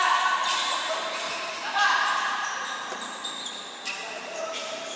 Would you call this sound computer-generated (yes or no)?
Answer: yes